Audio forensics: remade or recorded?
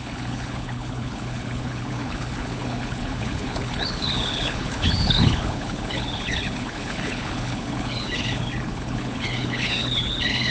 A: remade